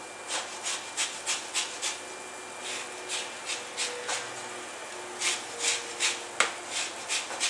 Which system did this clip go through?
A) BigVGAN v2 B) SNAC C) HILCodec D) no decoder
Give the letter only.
D